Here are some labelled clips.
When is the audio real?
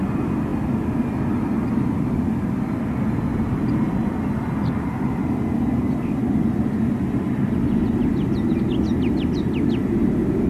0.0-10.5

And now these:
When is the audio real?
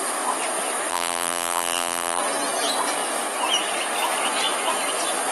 0.0-0.9; 2.2-5.3